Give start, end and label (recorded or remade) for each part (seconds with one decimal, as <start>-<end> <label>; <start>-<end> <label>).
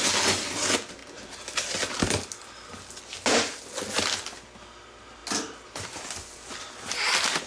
0.0-7.5 recorded